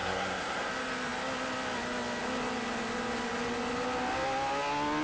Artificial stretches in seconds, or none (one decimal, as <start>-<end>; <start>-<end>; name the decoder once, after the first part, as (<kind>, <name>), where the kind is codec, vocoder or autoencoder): 0.0-0.7 (codec, SNAC)